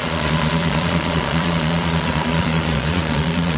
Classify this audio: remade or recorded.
remade